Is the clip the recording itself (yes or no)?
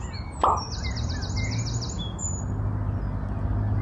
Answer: yes